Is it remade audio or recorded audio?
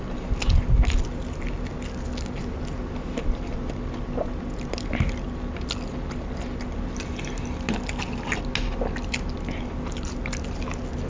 recorded